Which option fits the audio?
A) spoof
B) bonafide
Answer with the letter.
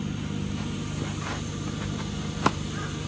B